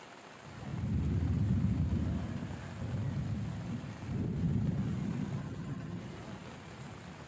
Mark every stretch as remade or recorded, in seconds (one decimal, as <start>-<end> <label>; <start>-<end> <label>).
0.0-5.4 recorded; 5.4-6.0 remade; 6.0-7.3 recorded